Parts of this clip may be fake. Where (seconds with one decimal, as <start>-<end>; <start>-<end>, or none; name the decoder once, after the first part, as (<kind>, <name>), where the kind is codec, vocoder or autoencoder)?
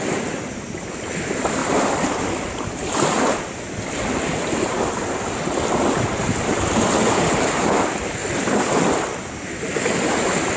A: none